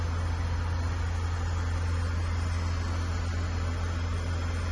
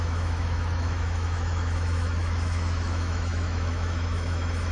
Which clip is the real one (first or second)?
first